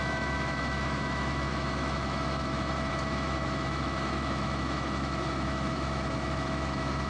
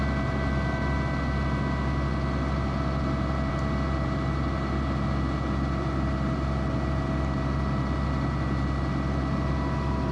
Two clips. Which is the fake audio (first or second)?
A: first